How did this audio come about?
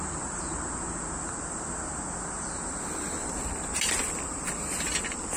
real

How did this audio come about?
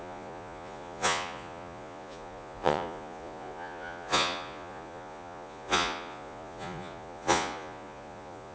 fake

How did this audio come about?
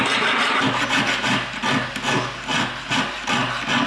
real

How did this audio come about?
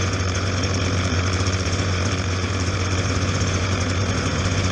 fake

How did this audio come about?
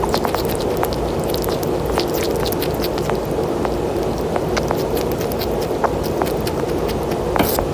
real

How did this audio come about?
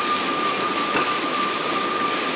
real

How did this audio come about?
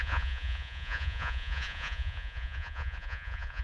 fake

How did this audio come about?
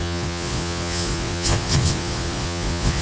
fake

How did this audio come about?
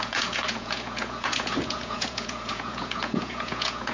fake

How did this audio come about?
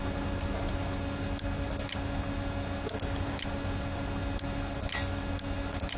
real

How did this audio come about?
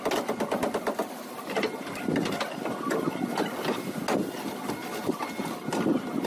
real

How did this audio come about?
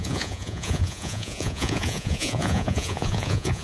fake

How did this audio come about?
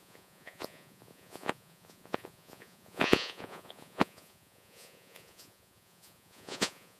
fake